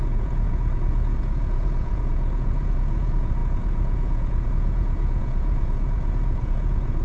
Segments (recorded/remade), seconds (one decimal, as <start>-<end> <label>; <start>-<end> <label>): 0.0-7.0 remade